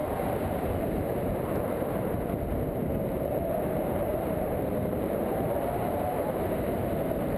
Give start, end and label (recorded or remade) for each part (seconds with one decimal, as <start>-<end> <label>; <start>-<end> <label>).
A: 0.0-2.2 remade; 2.2-2.8 recorded; 2.8-7.4 remade